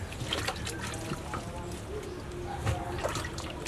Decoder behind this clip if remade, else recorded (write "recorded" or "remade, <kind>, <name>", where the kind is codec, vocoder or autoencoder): recorded